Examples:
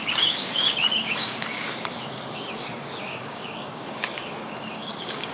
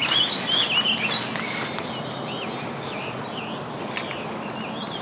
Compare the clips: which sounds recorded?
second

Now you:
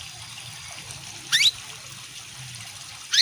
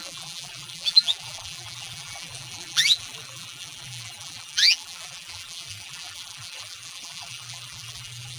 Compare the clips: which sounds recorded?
first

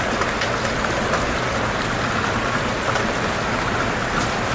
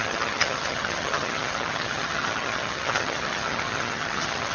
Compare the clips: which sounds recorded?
first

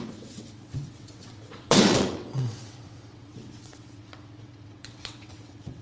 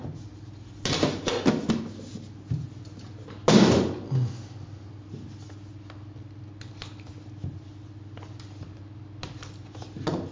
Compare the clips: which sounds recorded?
second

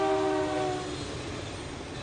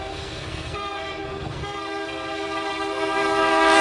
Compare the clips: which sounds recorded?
first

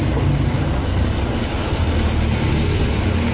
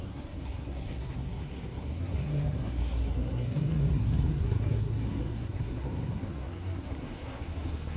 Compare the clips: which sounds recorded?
first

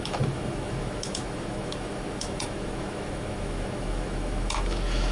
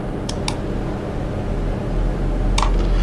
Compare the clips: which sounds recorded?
second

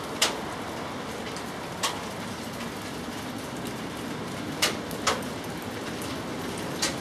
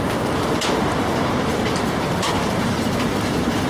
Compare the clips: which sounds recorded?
first